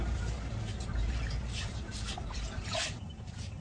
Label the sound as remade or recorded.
remade